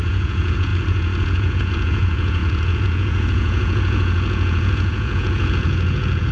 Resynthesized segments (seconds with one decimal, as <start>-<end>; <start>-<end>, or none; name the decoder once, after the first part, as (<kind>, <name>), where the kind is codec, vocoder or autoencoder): 0.0-6.3 (vocoder, Vocos)